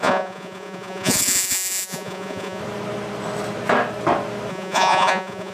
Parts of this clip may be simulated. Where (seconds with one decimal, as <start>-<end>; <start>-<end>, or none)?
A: 0.0-2.6; 4.5-5.5